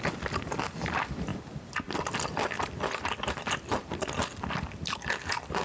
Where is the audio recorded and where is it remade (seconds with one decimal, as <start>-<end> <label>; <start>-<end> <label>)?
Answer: 0.0-5.6 recorded